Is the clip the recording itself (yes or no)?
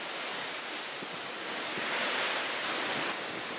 yes